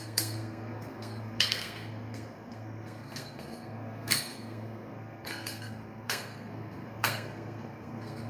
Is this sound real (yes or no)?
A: no